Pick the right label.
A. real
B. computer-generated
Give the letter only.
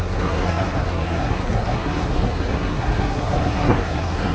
B